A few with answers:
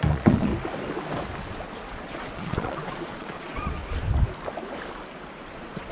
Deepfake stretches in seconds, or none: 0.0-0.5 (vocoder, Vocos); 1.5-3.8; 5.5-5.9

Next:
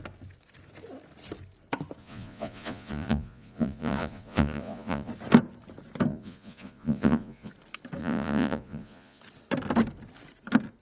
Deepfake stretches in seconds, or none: 2.0-5.1 (vocoder, Vocos); 6.1-7.5; 8.0-9.2

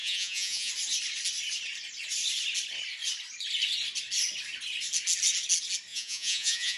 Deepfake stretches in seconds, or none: 0.0-0.7 (vocoder, Vocos); 5.9-6.8

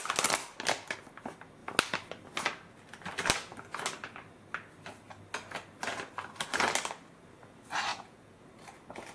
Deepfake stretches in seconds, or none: 7.9-8.4 (vocoder, Vocos)

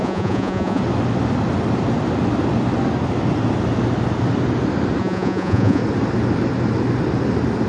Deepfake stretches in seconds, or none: 0.0-0.8 (vocoder, Vocos); 5.0-5.8

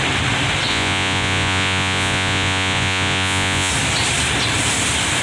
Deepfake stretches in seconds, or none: 0.7-3.7 (vocoder, Vocos)